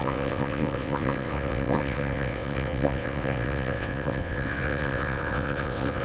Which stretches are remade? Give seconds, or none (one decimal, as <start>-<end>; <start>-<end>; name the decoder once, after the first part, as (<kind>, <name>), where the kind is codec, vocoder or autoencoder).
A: 0.0-6.0 (vocoder, WaveNeXt)

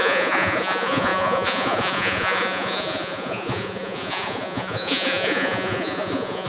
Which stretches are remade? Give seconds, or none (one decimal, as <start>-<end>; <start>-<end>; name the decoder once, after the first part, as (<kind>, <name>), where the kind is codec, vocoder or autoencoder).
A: 0.0-6.5 (vocoder, Vocos)

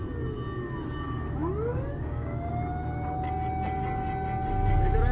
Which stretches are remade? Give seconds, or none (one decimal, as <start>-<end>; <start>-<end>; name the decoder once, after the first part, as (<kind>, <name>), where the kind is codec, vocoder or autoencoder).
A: 1.7-2.5 (codec, DAC)